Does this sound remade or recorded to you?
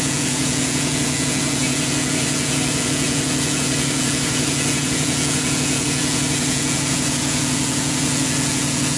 remade